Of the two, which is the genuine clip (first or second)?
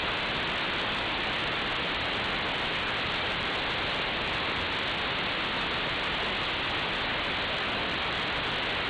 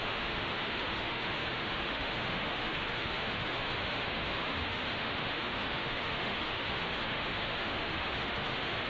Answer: first